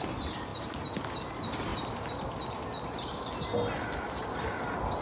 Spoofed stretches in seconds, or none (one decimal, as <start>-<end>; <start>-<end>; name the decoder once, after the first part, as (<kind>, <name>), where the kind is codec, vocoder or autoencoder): none